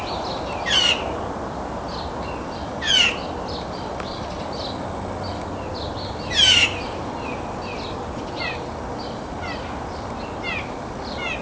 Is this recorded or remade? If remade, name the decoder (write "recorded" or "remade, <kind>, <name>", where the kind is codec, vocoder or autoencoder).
recorded